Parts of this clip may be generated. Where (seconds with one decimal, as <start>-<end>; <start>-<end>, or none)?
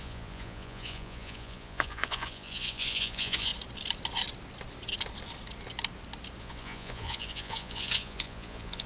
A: 0.0-3.5; 6.4-8.9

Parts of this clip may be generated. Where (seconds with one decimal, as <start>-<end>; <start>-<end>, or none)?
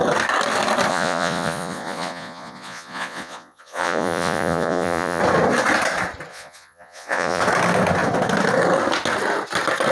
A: 0.9-5.2; 6.3-7.4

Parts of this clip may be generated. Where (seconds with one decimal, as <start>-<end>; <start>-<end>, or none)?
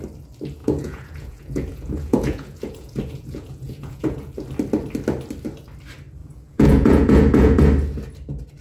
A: 0.6-4.3; 6.2-7.6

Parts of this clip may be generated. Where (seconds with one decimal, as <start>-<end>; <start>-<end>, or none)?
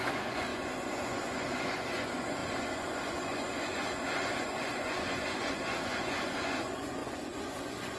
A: 0.0-8.0